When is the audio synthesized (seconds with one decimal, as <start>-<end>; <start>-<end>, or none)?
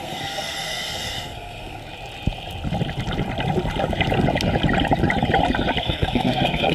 0.0-1.8; 5.8-6.7